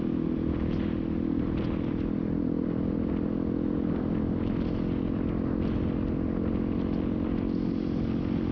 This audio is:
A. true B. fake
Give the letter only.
A